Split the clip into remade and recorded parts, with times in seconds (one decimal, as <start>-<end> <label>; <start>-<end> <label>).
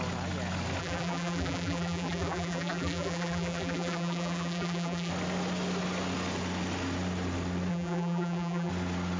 0.0-0.8 recorded; 0.8-5.1 remade; 5.1-7.7 recorded; 7.7-8.7 remade; 8.7-9.2 recorded